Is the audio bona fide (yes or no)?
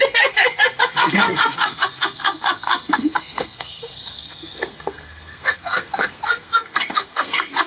no